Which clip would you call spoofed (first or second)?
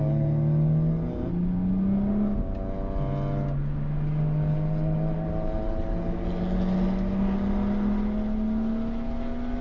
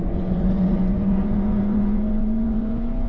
second